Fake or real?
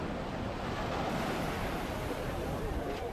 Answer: real